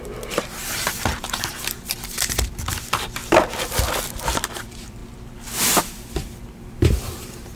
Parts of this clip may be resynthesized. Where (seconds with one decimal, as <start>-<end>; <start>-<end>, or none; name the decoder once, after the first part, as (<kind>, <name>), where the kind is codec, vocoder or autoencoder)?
0.0-3.2 (vocoder, BigVGAN v2); 4.5-5.0; 5.8-7.6

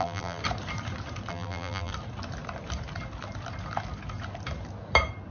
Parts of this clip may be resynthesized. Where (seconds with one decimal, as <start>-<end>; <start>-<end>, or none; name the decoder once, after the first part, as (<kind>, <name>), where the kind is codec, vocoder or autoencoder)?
0.0-0.4 (vocoder, BigVGAN v2); 1.3-1.9

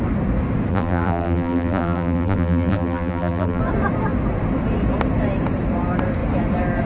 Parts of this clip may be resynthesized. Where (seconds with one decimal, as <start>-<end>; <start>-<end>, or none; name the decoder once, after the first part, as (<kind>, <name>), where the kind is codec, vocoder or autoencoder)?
0.7-3.6 (vocoder, BigVGAN v2)